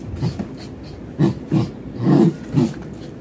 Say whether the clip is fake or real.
real